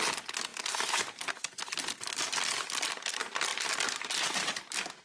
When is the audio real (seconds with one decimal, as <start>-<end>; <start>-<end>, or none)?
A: 0.0-5.0